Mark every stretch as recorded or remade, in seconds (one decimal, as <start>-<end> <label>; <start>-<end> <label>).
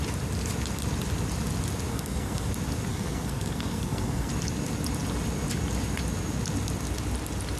0.0-1.9 recorded; 1.9-2.5 remade; 2.5-2.9 recorded; 2.9-4.3 remade; 4.3-7.6 recorded